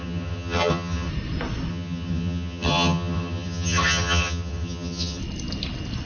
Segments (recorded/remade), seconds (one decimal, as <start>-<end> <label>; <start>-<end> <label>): 0.0-1.1 remade; 1.1-1.7 recorded; 1.7-5.2 remade; 5.2-6.1 recorded